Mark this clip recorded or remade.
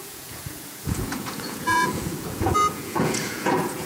remade